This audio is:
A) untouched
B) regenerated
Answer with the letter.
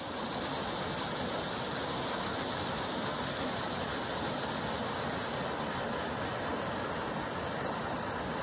A